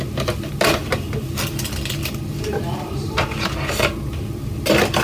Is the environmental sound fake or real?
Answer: real